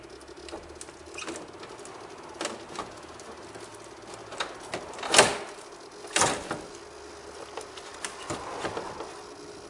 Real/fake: real